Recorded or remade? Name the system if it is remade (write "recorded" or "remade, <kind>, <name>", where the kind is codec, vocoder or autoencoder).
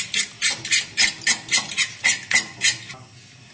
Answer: recorded